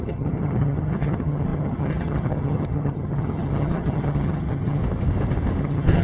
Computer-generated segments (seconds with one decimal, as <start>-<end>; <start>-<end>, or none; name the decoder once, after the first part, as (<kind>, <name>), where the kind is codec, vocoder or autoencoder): 0.0-4.8 (vocoder, HiFi-GAN); 5.6-6.0